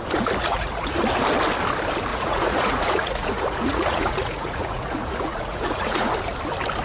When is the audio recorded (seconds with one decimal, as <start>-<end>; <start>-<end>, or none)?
0.0-0.4; 1.0-2.1; 6.1-6.8